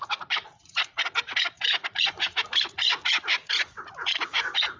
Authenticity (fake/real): fake